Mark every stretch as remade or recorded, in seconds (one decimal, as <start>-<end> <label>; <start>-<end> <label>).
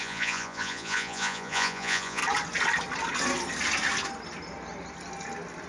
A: 0.0-2.2 remade; 2.2-5.7 recorded